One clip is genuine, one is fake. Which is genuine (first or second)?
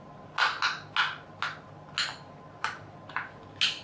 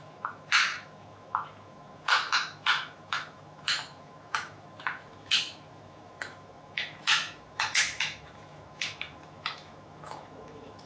first